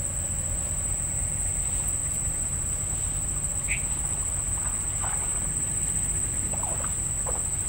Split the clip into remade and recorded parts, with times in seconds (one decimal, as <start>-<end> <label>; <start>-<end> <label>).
0.0-2.0 recorded; 2.0-3.0 remade; 3.0-7.7 recorded